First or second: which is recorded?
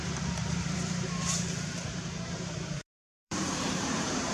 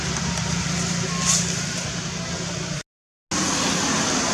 second